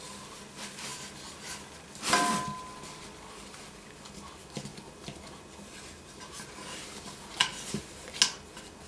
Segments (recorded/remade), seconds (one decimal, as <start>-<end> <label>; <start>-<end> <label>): 0.0-8.9 recorded